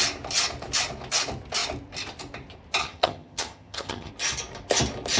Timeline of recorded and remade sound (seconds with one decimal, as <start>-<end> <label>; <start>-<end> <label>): 0.0-2.8 recorded; 2.8-4.1 remade; 4.1-5.2 recorded